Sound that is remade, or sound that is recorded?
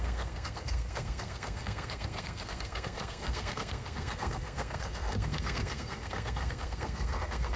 remade